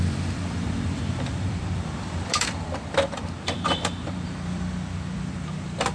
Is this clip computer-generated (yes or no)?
yes